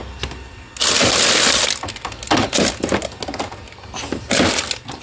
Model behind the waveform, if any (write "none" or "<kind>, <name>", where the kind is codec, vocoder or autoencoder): none